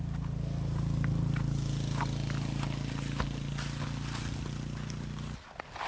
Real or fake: real